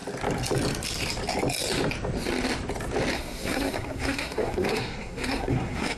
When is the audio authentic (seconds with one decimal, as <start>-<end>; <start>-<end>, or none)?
0.0-3.1